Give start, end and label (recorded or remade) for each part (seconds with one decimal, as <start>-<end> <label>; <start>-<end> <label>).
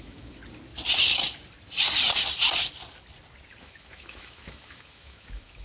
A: 0.0-0.4 remade; 0.4-3.6 recorded; 3.6-5.6 remade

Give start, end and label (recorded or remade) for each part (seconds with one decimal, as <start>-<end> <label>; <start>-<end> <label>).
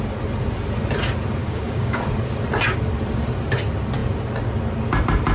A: 0.0-1.4 recorded; 1.4-2.0 remade; 2.0-5.3 recorded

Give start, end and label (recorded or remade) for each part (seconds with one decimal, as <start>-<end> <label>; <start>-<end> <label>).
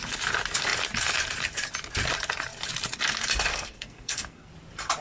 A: 0.0-3.5 recorded; 3.5-4.5 remade; 4.5-5.0 recorded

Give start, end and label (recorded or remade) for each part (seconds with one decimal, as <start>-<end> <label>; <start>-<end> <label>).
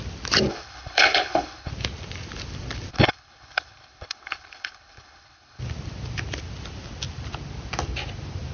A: 0.0-0.5 recorded; 0.5-1.7 remade; 1.7-2.9 recorded; 2.9-5.6 remade; 5.6-8.5 recorded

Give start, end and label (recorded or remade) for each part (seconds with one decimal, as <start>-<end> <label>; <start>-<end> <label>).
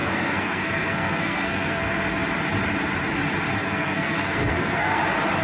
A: 0.0-1.8 remade; 1.8-3.6 recorded; 3.6-5.0 remade; 5.0-5.4 recorded